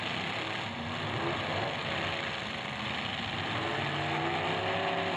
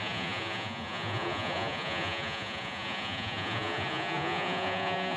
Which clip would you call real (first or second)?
first